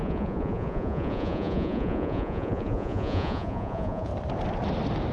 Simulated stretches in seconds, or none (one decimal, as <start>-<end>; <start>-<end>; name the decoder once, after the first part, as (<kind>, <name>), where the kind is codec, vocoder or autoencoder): 0.0-4.1 (vocoder, Vocos)